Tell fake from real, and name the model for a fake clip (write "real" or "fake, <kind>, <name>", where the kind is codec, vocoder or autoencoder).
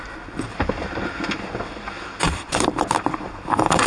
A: real